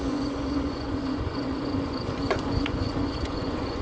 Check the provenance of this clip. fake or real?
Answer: fake